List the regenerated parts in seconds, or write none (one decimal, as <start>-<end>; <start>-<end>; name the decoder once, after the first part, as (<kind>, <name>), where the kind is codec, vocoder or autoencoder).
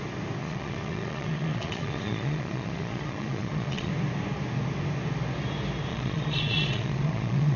0.4-3.9 (vocoder, Vocos); 5.9-7.6